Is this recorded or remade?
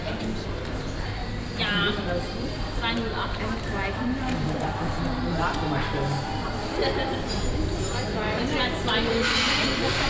recorded